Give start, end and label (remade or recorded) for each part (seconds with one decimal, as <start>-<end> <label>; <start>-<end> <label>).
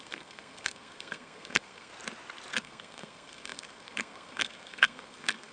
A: 0.0-1.9 remade; 1.9-2.6 recorded; 2.6-5.5 remade